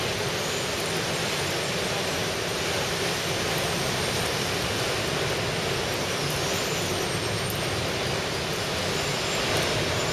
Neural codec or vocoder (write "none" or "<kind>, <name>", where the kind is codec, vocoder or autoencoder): none